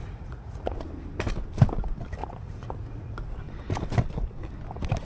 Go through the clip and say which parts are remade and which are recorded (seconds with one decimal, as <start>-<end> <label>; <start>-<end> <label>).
0.0-0.8 remade; 0.8-2.2 recorded; 2.2-3.1 remade; 3.1-5.0 recorded